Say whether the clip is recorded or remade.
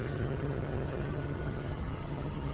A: remade